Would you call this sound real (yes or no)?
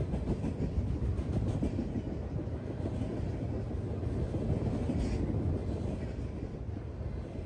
yes